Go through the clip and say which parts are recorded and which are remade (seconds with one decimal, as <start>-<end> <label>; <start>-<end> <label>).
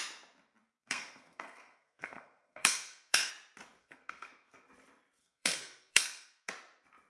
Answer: 0.0-0.8 recorded; 0.8-3.3 remade; 3.3-3.8 recorded; 3.8-4.7 remade; 4.7-5.2 recorded; 5.2-6.5 remade; 6.5-7.1 recorded